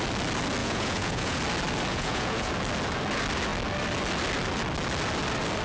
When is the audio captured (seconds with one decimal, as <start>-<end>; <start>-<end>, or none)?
0.0-0.6; 1.4-1.9; 2.5-5.6